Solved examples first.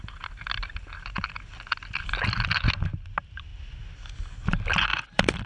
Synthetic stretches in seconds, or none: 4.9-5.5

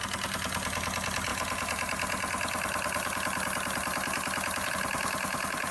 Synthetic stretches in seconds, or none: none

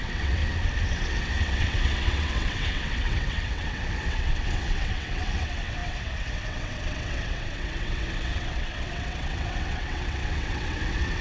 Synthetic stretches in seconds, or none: 0.0-0.4; 0.9-11.2

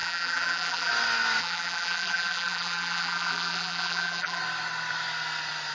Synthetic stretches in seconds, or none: 0.0-0.9; 1.4-4.4